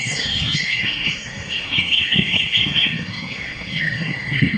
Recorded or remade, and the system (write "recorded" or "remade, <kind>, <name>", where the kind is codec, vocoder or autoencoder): remade, codec, SNAC